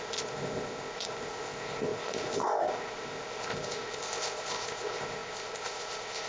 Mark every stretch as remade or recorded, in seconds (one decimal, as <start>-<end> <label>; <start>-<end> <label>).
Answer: 0.0-6.3 remade